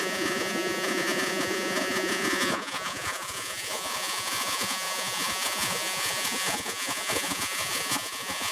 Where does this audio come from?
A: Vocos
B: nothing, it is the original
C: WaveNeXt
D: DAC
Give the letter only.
A